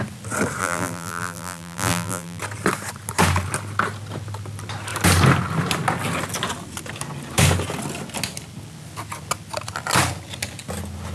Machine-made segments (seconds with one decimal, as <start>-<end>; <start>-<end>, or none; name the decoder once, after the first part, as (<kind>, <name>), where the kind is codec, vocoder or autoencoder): 0.6-2.4 (vocoder, BigVGAN v2)